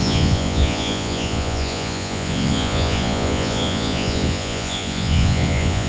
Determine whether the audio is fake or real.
fake